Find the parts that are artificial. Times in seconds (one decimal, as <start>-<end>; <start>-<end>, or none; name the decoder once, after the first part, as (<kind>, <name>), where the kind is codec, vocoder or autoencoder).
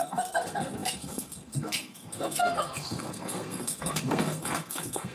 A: 0.0-5.1 (codec, SNAC)